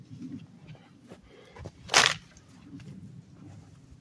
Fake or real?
real